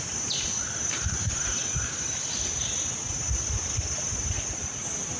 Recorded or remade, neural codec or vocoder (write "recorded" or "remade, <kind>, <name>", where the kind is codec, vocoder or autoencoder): recorded